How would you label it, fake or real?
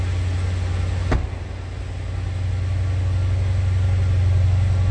real